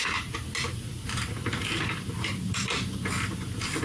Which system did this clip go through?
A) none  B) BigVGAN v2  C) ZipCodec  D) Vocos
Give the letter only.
B